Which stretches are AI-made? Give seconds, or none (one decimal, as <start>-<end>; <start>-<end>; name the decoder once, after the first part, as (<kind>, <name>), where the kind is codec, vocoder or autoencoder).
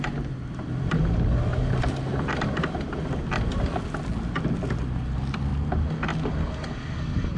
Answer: 2.1-2.8 (vocoder, BigVGAN v2)